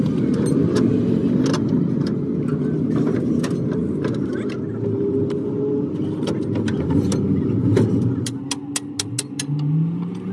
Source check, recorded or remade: recorded